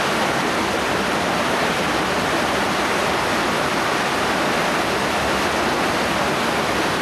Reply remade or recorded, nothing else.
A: recorded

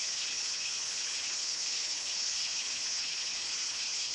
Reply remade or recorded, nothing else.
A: remade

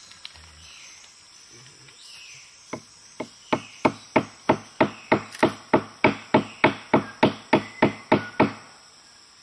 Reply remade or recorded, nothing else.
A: recorded